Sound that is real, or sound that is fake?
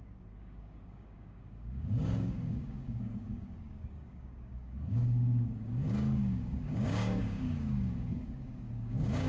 fake